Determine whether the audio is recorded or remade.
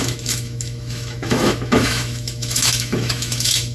remade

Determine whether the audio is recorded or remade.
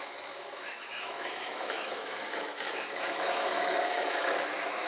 remade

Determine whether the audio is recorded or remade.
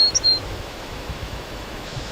remade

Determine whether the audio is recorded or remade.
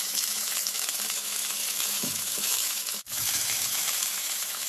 remade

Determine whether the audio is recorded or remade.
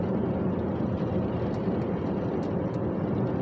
recorded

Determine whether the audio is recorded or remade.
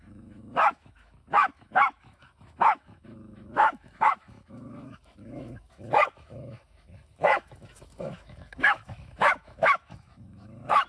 remade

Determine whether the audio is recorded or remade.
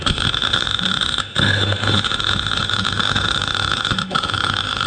remade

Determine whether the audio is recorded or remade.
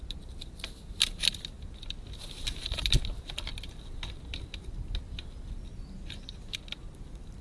recorded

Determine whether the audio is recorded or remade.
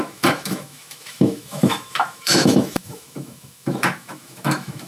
remade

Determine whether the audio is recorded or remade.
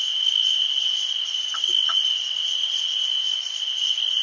recorded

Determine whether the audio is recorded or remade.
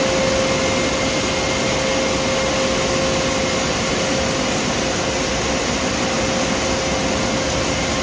recorded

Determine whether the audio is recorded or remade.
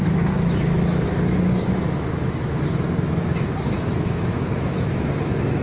remade